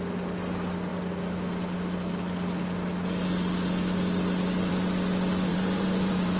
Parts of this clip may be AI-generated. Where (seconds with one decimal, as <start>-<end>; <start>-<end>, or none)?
5.5-6.4